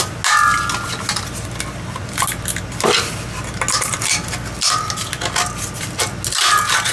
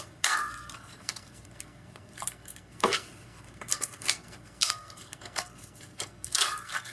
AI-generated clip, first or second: second